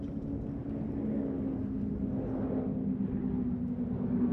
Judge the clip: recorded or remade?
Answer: recorded